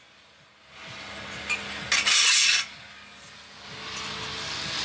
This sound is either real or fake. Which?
real